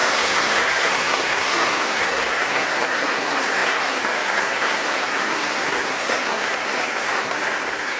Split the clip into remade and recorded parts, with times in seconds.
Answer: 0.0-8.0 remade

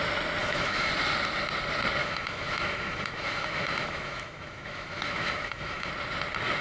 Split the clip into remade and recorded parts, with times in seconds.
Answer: 0.0-0.4 recorded; 0.4-0.9 remade; 0.9-2.0 recorded; 2.0-5.9 remade; 5.9-6.6 recorded

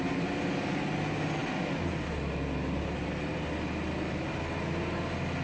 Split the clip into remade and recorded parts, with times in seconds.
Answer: 0.0-5.4 recorded